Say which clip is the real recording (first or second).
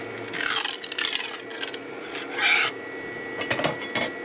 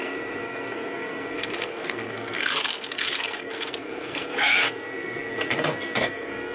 first